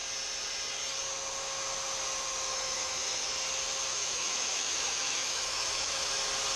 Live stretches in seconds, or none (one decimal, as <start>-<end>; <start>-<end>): 0.0-2.5; 3.2-3.9; 6.1-6.6